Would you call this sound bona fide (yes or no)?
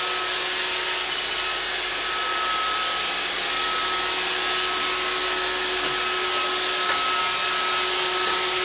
yes